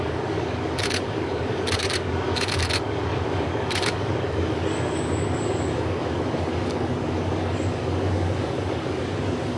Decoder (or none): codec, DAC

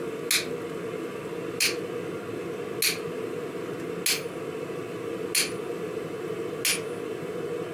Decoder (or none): none